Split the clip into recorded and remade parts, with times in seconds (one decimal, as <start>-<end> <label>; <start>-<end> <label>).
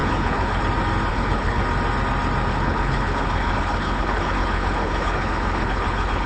0.0-0.6 remade; 0.6-1.1 recorded; 1.1-1.6 remade; 1.6-2.5 recorded; 2.5-6.3 remade